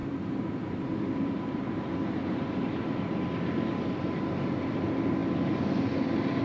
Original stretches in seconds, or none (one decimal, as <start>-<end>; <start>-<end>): 1.8-6.4